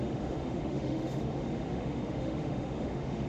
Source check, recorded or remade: remade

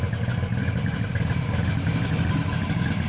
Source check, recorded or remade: recorded